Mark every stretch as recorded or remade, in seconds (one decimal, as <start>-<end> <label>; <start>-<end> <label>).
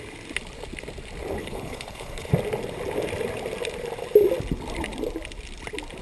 0.0-1.4 recorded; 1.4-2.3 remade; 2.3-6.0 recorded